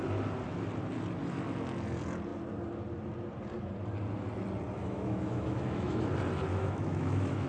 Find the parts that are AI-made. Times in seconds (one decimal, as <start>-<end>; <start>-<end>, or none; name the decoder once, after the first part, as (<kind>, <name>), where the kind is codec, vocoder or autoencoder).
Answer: 4.8-6.1 (autoencoder, DAC-VAE); 6.5-7.5